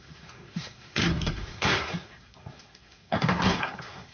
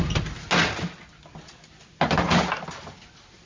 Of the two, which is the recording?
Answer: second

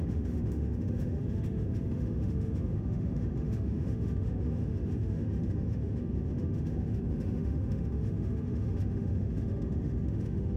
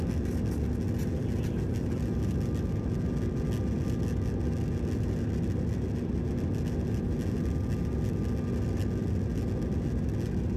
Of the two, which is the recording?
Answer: second